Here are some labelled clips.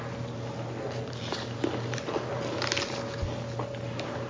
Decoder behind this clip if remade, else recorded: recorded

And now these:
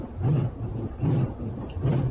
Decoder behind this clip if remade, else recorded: recorded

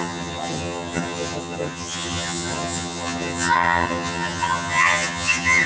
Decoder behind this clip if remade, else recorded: remade, vocoder, HiFi-GAN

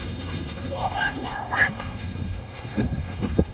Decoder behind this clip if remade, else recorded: remade, codec, SNAC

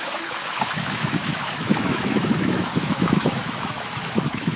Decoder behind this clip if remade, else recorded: remade, autoencoder, DAC-VAE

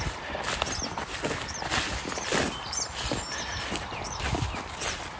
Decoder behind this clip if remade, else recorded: recorded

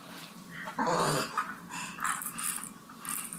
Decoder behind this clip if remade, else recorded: recorded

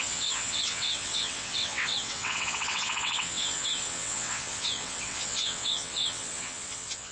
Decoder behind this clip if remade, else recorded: remade, vocoder, WaveNeXt